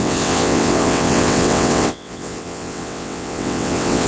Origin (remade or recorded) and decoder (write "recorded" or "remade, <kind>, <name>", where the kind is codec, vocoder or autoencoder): remade, vocoder, WaveNeXt